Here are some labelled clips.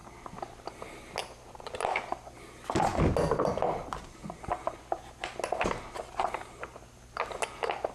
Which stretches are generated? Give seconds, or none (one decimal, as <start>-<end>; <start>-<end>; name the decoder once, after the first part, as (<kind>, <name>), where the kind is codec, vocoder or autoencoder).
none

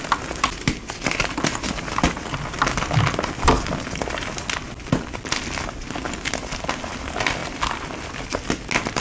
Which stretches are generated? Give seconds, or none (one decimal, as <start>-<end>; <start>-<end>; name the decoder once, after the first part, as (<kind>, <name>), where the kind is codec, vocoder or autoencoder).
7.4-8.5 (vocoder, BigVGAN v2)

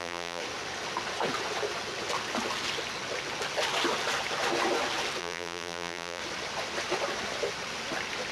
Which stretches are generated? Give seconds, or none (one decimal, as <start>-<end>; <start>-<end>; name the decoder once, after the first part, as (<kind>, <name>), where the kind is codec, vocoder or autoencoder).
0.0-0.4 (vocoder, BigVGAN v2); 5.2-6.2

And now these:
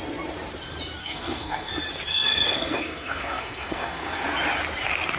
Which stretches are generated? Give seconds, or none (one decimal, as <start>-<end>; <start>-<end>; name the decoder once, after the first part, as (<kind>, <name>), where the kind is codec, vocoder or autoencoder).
1.0-1.7 (codec, SNAC); 2.1-4.2